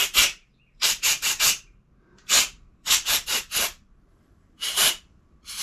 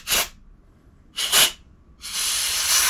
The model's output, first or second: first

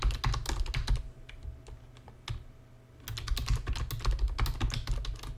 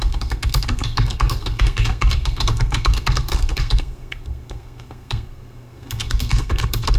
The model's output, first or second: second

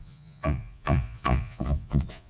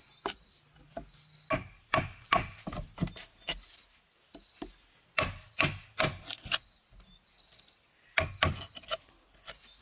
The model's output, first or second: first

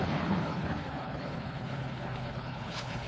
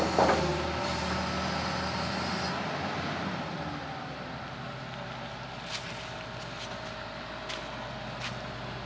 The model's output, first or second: first